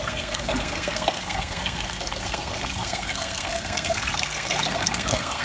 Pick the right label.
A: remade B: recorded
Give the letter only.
A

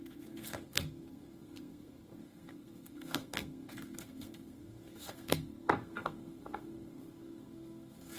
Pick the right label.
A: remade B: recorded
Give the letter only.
A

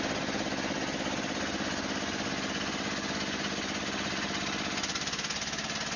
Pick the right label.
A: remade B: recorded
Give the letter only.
B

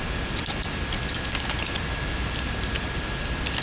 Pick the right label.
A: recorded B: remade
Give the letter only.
A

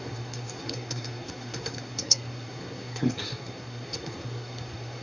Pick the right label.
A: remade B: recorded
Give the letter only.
A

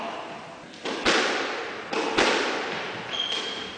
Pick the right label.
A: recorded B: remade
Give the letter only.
A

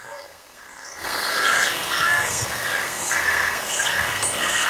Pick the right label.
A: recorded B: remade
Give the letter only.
B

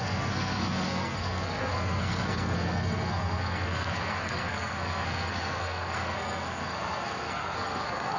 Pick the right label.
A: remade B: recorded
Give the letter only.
A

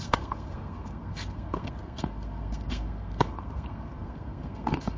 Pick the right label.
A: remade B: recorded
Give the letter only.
A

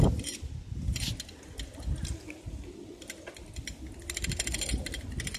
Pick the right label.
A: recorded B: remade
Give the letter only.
A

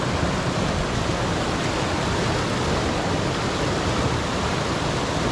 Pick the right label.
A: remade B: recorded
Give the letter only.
B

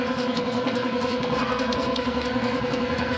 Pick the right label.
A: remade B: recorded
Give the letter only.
A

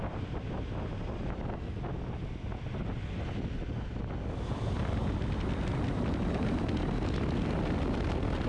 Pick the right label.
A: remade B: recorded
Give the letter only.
B